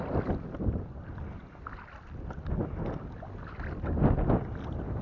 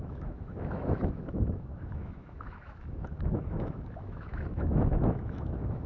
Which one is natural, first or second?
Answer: first